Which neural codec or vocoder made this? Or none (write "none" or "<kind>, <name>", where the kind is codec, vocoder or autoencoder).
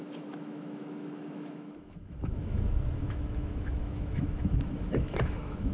autoencoder, DAC-VAE